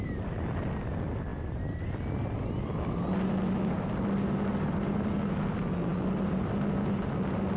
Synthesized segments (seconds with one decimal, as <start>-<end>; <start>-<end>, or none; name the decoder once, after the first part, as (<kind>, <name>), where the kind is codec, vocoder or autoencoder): none